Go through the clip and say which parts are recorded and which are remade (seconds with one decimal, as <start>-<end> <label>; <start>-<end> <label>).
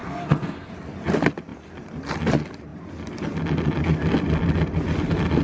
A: 0.0-0.7 remade; 0.7-5.4 recorded